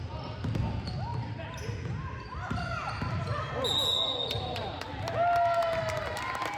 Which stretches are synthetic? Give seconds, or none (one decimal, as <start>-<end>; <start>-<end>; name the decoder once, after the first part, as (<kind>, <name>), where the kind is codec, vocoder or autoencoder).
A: 1.1-3.1 (vocoder, BigVGAN v2); 4.2-4.8